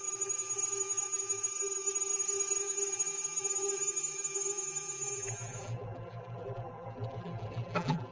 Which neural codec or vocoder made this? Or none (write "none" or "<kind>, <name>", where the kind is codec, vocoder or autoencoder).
vocoder, BigVGAN v2